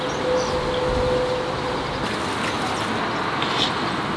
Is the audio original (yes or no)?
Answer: yes